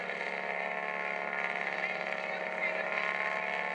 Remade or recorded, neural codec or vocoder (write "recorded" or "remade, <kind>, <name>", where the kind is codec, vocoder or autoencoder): recorded